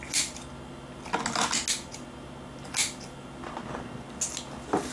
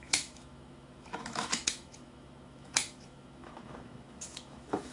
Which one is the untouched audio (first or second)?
first